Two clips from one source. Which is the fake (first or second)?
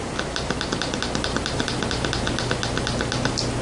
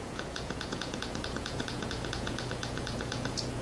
second